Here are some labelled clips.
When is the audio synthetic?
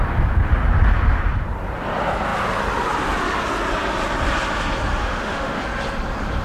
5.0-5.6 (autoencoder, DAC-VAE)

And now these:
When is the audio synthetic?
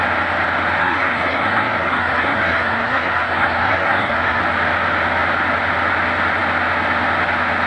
0.8-4.4 (codec, SNAC)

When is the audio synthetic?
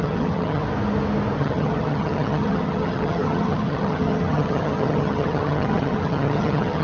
0.0-0.6 (vocoder, HiFi-GAN); 1.4-6.8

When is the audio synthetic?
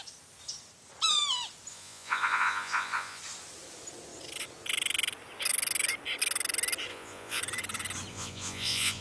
1.7-3.2 (vocoder, Vocos); 6.9-7.4; 8.1-9.0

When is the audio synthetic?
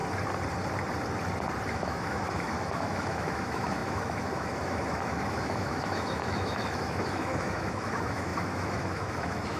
1.7-9.6 (autoencoder, DAC-VAE)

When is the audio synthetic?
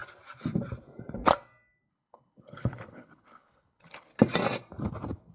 1.9-4.1 (codec, HILCodec)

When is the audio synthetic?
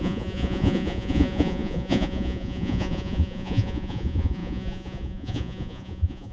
0.0-6.3 (vocoder, Vocos)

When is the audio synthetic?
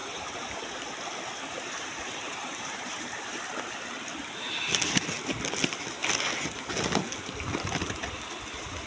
0.0-0.6 (vocoder, BigVGAN v2); 1.5-3.5